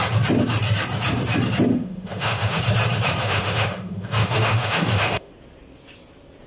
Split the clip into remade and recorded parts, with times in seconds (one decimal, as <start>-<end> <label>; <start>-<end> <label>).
0.0-1.7 recorded; 1.7-2.6 remade; 2.6-3.2 recorded; 3.2-5.3 remade; 5.3-6.5 recorded